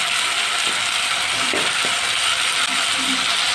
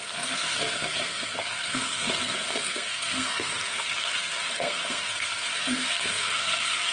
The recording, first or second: first